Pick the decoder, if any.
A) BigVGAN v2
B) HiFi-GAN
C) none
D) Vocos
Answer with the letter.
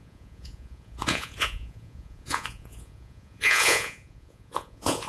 D